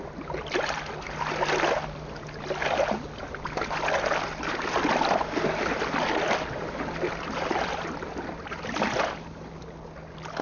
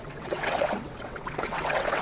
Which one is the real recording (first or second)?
first